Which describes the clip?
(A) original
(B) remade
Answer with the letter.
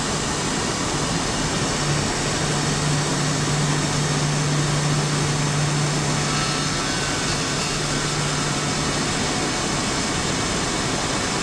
A